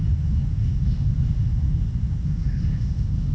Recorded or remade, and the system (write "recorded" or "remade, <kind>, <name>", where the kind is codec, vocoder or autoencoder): remade, autoencoder, DAC-VAE